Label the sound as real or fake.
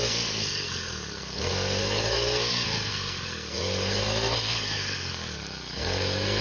fake